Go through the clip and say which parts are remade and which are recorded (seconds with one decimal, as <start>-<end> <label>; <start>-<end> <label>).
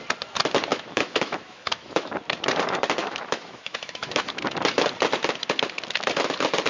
0.0-0.7 recorded; 0.7-2.1 remade; 2.1-3.0 recorded; 3.0-4.4 remade; 4.4-6.7 recorded